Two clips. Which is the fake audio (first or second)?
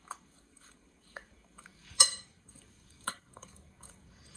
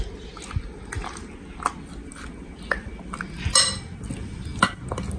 first